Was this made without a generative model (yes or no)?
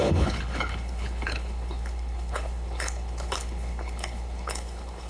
no